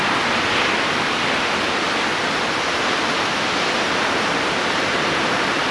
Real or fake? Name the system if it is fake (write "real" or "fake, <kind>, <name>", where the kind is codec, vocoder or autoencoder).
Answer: real